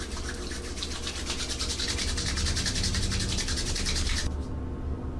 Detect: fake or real real